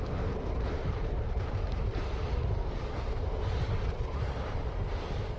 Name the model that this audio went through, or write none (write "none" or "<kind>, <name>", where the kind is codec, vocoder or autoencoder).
vocoder, BigVGAN v2